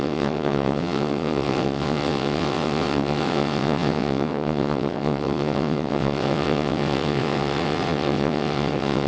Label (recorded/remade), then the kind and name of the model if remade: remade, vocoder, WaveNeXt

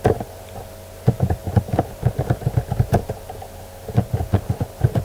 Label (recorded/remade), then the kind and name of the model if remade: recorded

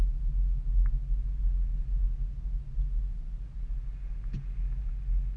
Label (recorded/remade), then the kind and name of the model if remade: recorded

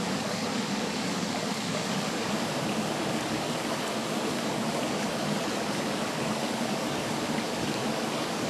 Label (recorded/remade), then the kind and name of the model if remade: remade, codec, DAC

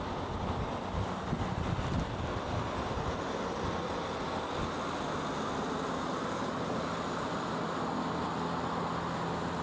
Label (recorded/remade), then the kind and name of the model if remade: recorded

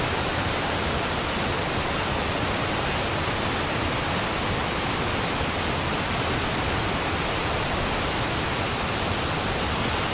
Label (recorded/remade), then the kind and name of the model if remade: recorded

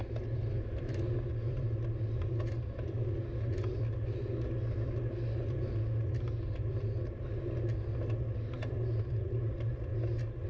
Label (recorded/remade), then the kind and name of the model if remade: recorded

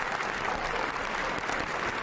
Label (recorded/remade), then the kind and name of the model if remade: recorded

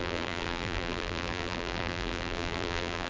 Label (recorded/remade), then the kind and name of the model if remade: remade, vocoder, BigVGAN v2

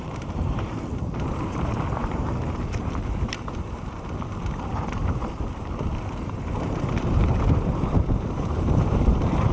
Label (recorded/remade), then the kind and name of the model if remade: remade, vocoder, BigVGAN v2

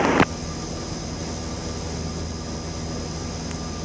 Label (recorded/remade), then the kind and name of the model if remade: recorded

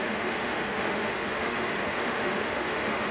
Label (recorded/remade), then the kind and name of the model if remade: remade, autoencoder, DAC-VAE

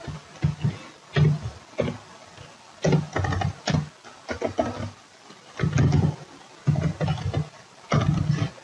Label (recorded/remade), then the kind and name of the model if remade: recorded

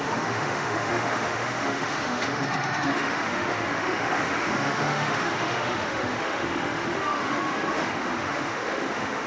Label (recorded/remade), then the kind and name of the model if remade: remade, autoencoder, DAC-VAE